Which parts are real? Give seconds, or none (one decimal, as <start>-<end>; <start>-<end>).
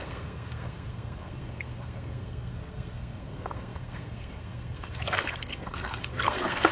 none